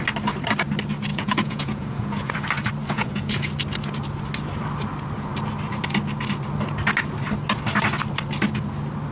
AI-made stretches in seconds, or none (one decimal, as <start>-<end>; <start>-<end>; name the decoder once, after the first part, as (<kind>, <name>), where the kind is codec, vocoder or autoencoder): 1.1-2.3 (vocoder, Vocos); 2.8-3.5